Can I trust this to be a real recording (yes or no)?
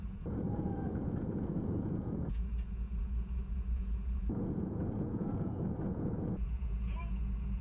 no